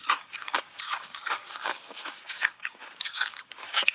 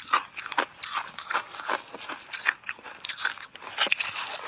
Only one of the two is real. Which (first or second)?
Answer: second